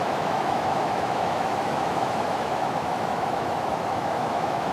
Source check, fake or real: fake